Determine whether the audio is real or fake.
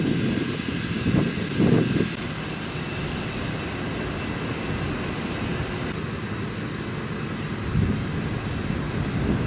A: real